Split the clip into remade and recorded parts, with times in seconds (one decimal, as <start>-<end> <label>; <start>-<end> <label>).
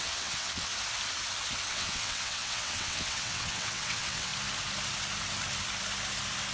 0.0-0.7 remade; 0.7-1.7 recorded; 1.7-4.3 remade; 4.3-6.5 recorded